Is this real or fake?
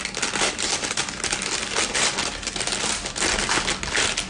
real